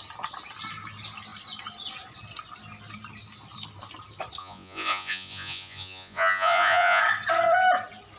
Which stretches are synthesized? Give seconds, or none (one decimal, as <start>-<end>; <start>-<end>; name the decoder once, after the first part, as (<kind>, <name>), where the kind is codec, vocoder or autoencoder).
4.4-7.0 (vocoder, Vocos)